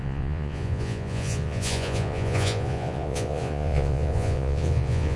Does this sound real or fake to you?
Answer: fake